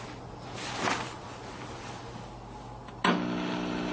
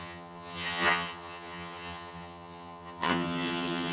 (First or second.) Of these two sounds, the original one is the first